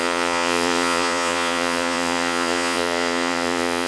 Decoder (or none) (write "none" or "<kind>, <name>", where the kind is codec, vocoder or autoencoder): vocoder, Vocos